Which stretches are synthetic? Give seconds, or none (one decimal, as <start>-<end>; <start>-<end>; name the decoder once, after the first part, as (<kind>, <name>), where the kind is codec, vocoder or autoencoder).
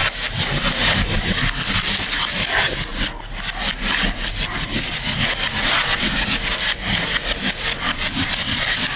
none